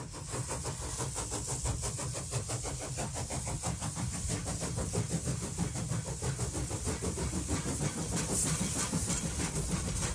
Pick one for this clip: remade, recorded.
recorded